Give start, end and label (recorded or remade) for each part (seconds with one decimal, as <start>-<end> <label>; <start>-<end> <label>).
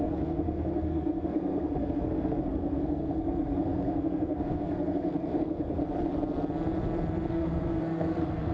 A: 0.0-5.8 remade; 5.8-7.3 recorded; 7.3-8.5 remade